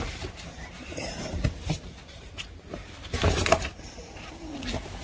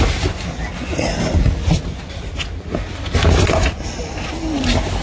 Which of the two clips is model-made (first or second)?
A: first